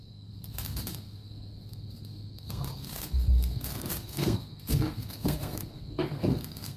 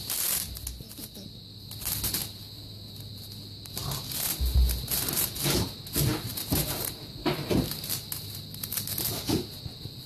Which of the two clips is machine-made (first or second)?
first